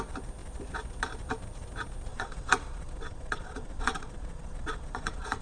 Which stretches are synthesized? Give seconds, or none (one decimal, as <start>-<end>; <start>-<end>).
2.1-5.4